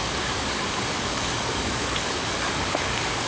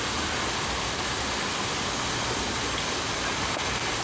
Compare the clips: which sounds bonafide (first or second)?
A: second